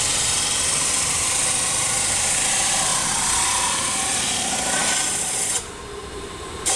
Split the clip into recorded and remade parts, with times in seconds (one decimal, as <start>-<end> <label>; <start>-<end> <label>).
0.0-2.9 remade; 2.9-3.4 recorded; 3.4-4.8 remade; 4.8-6.1 recorded; 6.1-6.8 remade

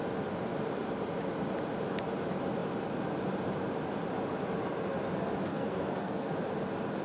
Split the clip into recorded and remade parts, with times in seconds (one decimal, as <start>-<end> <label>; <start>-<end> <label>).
0.0-5.5 recorded; 5.5-6.3 remade; 6.3-7.0 recorded

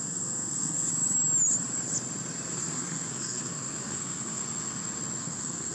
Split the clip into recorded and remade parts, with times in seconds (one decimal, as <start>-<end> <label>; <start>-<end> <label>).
0.0-0.9 remade; 0.9-2.5 recorded; 2.5-4.4 remade; 4.4-5.2 recorded; 5.2-5.7 remade

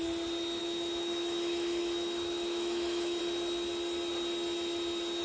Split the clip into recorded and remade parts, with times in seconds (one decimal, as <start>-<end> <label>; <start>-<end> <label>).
0.0-0.6 recorded; 0.6-3.2 remade; 3.2-5.2 recorded

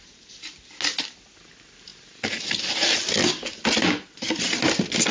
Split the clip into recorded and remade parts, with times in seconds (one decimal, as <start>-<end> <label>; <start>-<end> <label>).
0.0-5.1 recorded

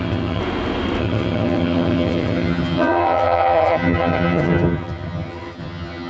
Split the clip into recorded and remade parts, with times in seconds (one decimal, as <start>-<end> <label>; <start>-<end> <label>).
0.0-0.4 remade; 0.4-1.0 recorded; 1.0-6.1 remade

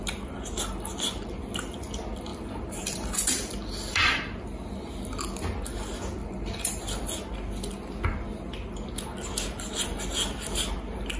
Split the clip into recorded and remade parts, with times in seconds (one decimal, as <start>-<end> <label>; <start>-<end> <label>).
0.0-2.3 recorded; 2.3-3.9 remade; 3.9-6.2 recorded; 6.2-7.0 remade; 7.0-11.2 recorded